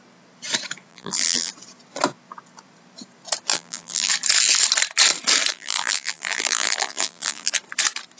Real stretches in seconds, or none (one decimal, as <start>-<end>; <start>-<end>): 0.0-0.9; 1.5-3.5; 4.1-5.5; 7.5-8.2